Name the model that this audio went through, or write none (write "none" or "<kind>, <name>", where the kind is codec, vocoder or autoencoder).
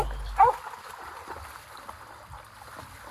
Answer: none